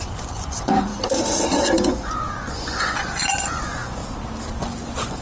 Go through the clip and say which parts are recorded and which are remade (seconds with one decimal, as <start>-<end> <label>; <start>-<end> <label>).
0.0-0.9 remade; 0.9-1.6 recorded; 1.6-4.0 remade; 4.0-4.5 recorded; 4.5-5.2 remade